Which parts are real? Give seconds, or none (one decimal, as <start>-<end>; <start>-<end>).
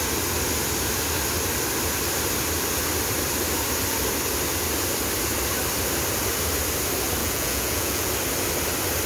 0.0-7.2; 8.1-9.1